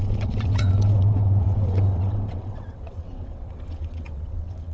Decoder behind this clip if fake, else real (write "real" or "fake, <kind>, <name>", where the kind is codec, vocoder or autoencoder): fake, vocoder, WaveNeXt